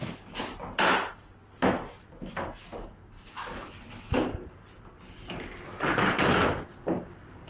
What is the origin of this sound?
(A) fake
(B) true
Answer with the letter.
B